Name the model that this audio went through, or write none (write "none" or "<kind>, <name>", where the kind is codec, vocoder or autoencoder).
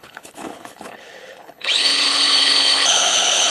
codec, HILCodec